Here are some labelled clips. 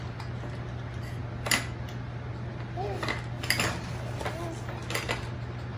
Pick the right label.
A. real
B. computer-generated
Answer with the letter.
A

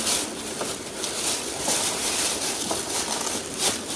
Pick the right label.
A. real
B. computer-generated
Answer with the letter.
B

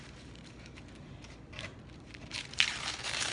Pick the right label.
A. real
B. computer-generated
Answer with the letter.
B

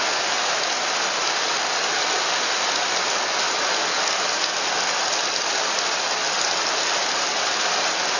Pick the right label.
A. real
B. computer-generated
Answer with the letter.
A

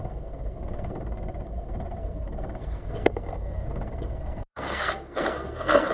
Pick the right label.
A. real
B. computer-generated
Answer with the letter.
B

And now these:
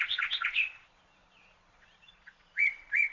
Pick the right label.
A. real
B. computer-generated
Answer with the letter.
B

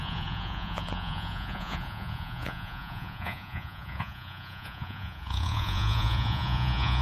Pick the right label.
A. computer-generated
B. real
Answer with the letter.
A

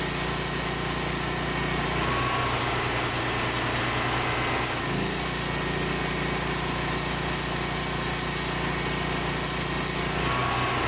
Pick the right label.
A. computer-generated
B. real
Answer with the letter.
B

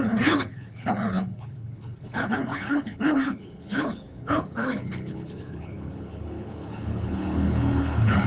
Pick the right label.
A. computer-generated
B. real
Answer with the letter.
A